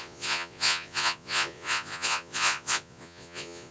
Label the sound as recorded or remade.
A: remade